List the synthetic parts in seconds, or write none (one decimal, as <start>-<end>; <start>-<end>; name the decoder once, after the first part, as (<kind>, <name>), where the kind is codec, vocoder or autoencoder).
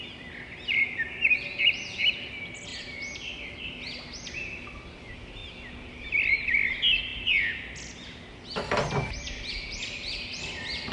none